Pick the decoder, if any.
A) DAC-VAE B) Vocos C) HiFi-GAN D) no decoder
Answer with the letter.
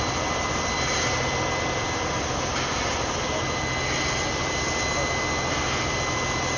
D